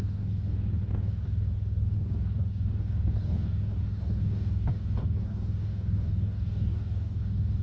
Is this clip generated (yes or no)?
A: yes